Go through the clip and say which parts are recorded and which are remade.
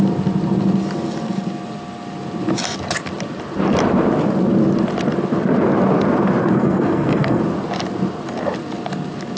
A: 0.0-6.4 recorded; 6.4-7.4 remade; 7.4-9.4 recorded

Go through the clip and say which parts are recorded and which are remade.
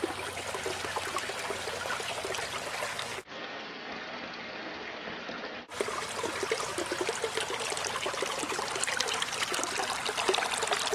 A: 0.0-2.9 recorded; 2.9-3.9 remade; 3.9-10.9 recorded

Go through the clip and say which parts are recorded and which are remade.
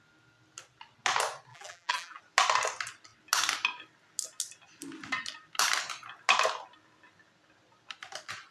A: 0.0-1.5 recorded; 1.5-2.2 remade; 2.2-8.5 recorded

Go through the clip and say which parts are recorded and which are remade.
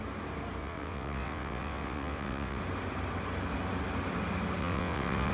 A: 0.0-0.6 recorded; 0.6-2.6 remade; 2.6-4.6 recorded; 4.6-5.3 remade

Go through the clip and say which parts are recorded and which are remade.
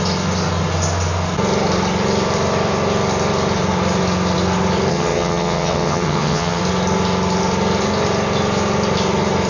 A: 0.0-4.9 recorded; 4.9-6.6 remade; 6.6-9.5 recorded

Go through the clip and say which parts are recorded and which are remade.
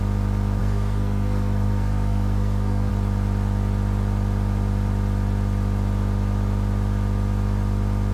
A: 0.0-0.6 recorded; 0.6-2.9 remade; 2.9-8.1 recorded